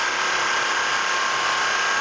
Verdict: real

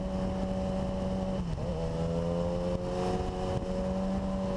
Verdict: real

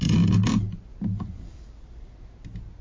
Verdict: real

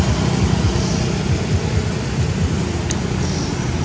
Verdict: real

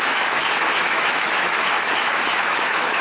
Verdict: fake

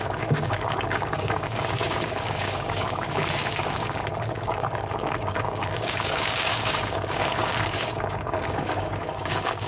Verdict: fake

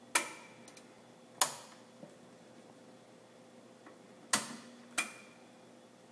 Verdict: real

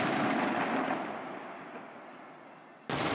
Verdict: real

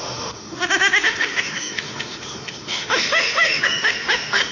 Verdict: fake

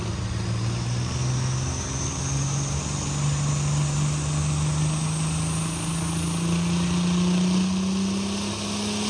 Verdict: real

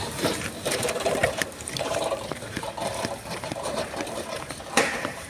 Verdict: fake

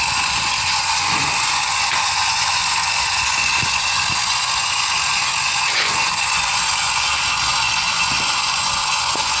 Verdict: fake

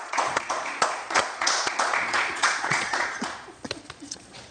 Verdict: fake